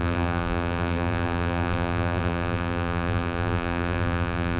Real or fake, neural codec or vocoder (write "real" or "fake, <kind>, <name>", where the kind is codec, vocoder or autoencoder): fake, vocoder, BigVGAN v2